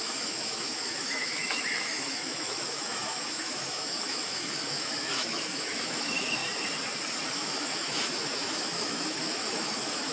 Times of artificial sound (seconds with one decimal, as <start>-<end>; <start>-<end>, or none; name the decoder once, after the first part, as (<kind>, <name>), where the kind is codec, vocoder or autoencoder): 0.0-6.4 (autoencoder, DAC-VAE); 7.3-10.1